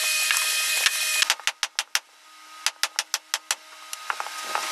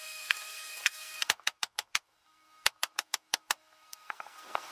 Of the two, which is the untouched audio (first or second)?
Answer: first